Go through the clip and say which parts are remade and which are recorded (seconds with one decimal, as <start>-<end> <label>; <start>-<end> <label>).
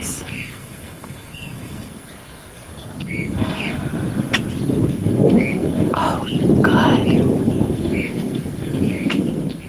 0.0-3.9 remade; 3.9-4.8 recorded; 4.8-6.0 remade; 6.0-7.4 recorded; 7.4-9.7 remade